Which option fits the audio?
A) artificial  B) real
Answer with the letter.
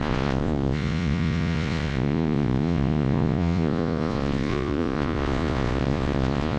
A